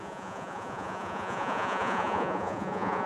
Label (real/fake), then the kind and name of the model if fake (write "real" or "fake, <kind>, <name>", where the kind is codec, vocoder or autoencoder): fake, vocoder, Vocos